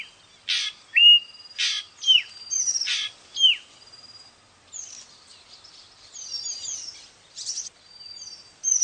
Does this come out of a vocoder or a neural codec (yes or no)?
no